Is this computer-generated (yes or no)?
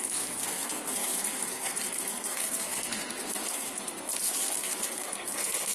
yes